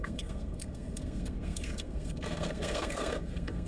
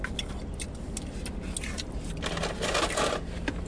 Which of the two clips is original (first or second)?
second